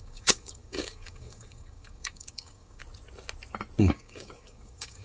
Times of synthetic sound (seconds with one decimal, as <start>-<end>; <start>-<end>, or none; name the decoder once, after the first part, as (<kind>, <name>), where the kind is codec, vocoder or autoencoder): 0.0-2.8 (codec, DAC); 3.8-5.0